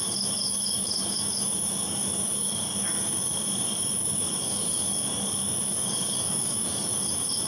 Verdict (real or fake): fake